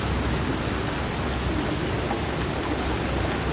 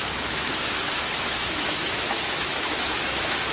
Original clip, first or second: first